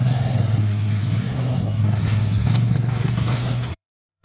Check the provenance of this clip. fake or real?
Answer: fake